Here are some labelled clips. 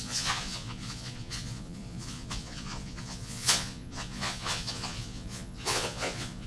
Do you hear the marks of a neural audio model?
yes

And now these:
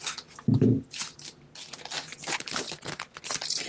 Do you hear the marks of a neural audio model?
no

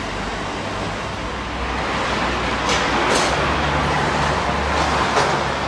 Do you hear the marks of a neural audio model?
no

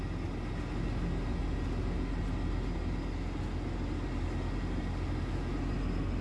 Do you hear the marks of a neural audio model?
no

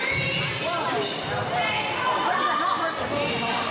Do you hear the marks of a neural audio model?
no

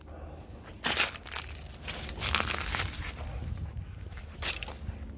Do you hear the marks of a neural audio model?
no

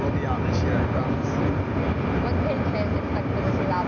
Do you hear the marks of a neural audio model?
no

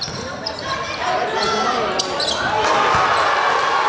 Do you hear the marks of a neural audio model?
no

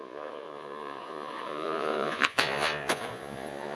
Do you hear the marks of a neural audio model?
yes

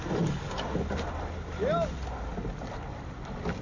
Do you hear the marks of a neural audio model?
no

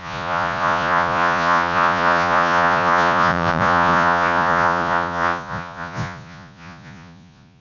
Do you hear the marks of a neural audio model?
yes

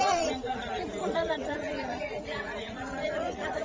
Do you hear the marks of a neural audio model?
yes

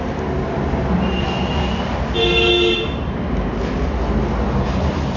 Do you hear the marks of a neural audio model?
no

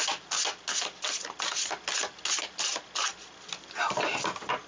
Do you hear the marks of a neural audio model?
no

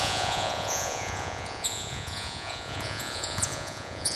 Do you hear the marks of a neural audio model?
yes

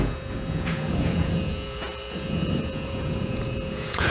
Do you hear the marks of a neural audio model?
yes